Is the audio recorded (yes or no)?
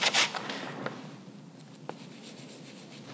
yes